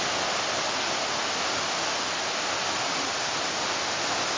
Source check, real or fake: real